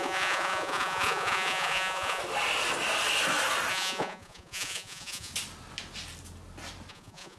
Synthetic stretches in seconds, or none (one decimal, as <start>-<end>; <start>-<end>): 0.0-2.2; 3.7-5.3; 6.9-7.4